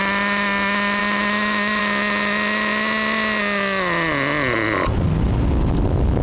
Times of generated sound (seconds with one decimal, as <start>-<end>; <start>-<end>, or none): none